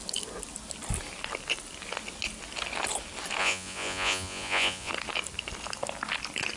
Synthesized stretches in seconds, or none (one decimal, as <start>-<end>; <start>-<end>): 3.4-4.9